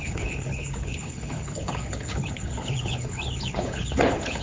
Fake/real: fake